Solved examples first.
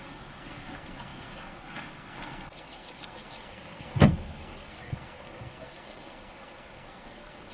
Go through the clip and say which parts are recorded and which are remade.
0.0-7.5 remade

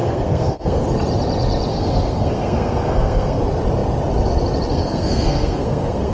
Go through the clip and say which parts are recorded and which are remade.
0.0-0.8 remade; 0.8-1.7 recorded; 1.7-3.4 remade; 3.4-4.7 recorded; 4.7-6.1 remade